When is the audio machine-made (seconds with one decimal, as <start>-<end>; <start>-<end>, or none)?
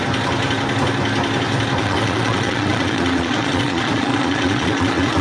1.8-5.2